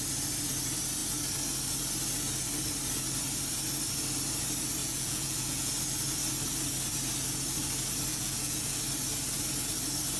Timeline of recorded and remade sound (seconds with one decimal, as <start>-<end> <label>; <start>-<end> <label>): 0.0-4.8 recorded; 4.8-5.7 remade; 5.7-8.1 recorded; 8.1-8.8 remade; 8.8-10.2 recorded